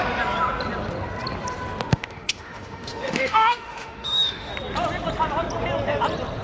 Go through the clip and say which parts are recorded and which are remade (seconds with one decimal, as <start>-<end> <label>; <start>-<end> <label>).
0.0-1.9 recorded; 1.9-4.5 remade; 4.5-6.4 recorded